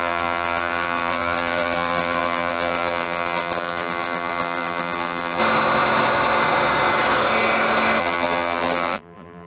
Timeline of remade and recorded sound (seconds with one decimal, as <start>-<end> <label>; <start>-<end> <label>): 0.0-5.4 remade; 5.4-8.0 recorded; 8.0-9.5 remade